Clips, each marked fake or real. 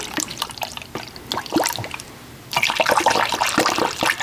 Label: real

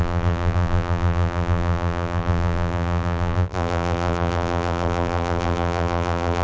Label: fake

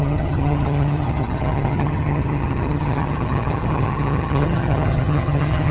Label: fake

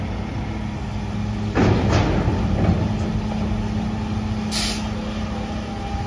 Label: real